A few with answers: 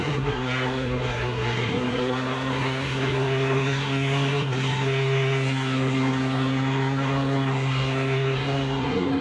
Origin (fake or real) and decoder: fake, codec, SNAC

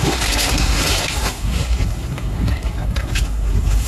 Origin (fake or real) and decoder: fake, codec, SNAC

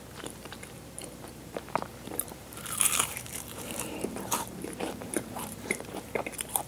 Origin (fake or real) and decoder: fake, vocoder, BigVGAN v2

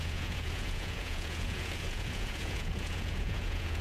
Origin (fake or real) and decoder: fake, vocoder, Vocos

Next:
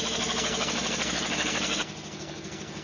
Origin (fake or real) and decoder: fake, codec, SNAC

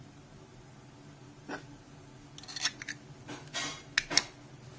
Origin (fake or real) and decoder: real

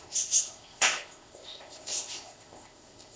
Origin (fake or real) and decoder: fake, codec, ZipCodec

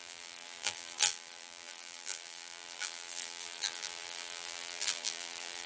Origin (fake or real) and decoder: fake, vocoder, BigVGAN v2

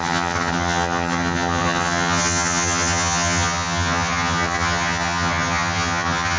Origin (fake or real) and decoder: fake, vocoder, HiFi-GAN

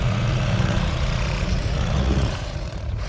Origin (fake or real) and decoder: fake, vocoder, Vocos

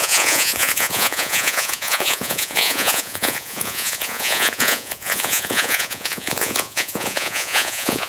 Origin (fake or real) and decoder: fake, vocoder, Vocos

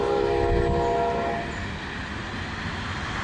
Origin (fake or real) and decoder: real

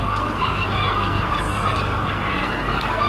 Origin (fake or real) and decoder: fake, codec, SNAC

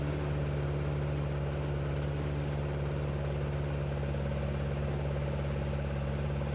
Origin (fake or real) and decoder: real